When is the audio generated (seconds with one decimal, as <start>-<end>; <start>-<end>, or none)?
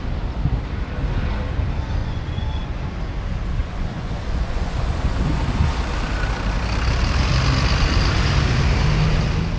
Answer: 2.0-2.8; 3.6-5.4